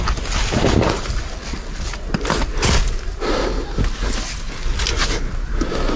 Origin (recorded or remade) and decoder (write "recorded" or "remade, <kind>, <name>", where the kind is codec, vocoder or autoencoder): recorded